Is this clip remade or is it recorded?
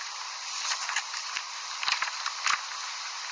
recorded